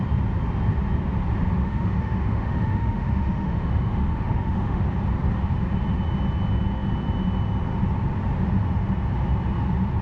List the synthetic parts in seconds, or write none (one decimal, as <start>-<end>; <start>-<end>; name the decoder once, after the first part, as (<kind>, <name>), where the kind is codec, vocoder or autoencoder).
1.6-4.8 (autoencoder, DAC-VAE)